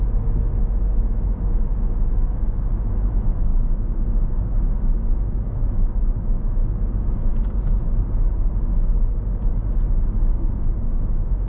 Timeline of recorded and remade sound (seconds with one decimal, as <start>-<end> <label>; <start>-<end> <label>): 0.0-3.5 remade; 3.5-5.1 recorded; 5.1-7.3 remade; 7.3-10.8 recorded; 10.8-11.5 remade